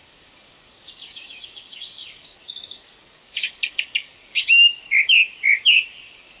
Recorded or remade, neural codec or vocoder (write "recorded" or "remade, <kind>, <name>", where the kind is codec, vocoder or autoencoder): remade, codec, DAC